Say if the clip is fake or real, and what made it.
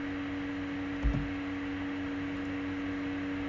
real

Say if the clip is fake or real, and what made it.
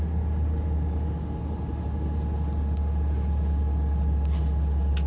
real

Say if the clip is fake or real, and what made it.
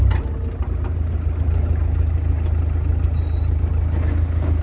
real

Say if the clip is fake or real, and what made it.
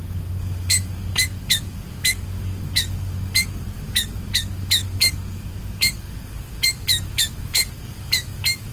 fake, codec, DAC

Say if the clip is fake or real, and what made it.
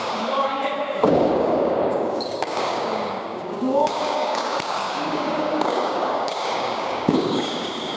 fake, codec, DAC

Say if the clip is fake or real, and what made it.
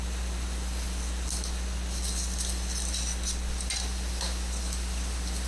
real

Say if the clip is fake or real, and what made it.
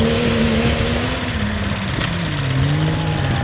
real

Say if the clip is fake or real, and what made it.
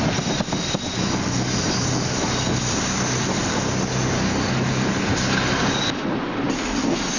real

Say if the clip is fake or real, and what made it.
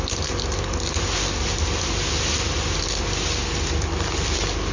real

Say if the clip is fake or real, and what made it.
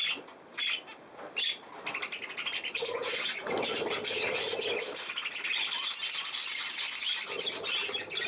real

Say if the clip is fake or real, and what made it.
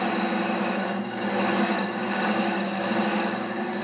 fake, codec, DAC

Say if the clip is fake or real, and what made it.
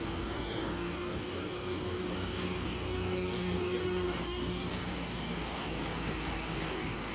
fake, codec, DAC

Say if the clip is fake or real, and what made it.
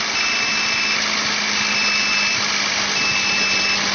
real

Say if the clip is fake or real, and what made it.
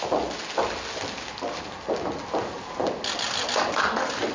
real